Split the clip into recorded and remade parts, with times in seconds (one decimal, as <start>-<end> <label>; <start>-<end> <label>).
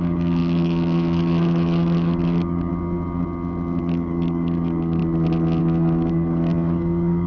0.0-2.7 remade; 2.7-3.8 recorded; 3.8-5.0 remade; 5.0-5.6 recorded; 5.6-7.3 remade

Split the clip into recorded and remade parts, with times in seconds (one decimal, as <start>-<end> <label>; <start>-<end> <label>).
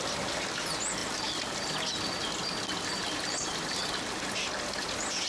0.0-5.3 recorded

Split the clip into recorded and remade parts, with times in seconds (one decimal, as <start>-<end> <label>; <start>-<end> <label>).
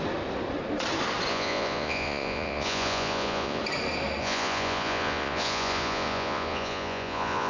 0.0-1.3 recorded; 1.3-3.6 remade; 3.6-4.2 recorded; 4.2-7.5 remade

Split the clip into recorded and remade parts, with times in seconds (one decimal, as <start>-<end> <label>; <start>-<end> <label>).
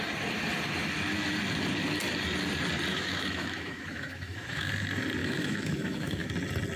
0.0-2.9 recorded; 2.9-4.7 remade; 4.7-5.2 recorded; 5.2-6.3 remade; 6.3-6.8 recorded